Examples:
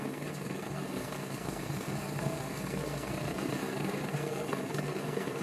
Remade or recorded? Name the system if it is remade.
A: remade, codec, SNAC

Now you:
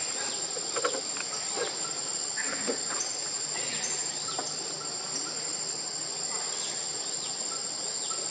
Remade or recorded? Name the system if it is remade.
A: recorded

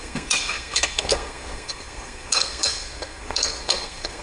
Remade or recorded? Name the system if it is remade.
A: remade, codec, SNAC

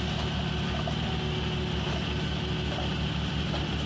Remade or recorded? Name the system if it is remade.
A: recorded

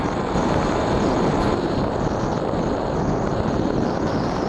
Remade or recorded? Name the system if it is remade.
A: recorded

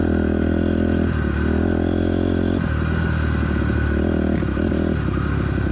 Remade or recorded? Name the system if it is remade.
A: recorded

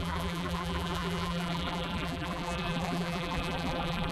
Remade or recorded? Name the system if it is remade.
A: remade, vocoder, BigVGAN v2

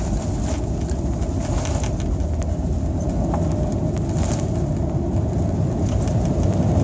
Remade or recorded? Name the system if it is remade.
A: recorded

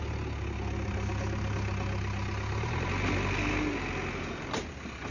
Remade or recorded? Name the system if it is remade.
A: recorded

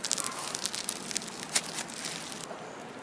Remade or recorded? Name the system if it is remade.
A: recorded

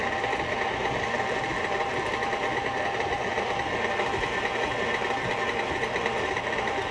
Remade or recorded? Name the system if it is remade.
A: recorded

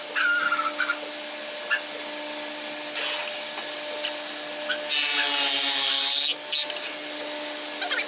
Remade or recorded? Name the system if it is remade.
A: recorded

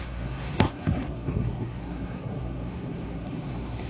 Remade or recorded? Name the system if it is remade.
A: remade, codec, SNAC